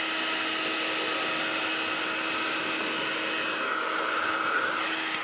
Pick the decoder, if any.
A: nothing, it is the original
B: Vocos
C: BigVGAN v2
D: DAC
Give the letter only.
A